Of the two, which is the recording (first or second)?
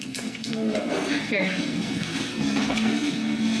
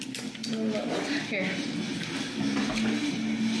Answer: second